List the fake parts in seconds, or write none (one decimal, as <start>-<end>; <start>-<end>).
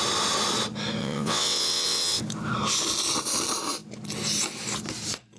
1.0-2.2